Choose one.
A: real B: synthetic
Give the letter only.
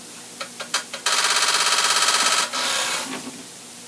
A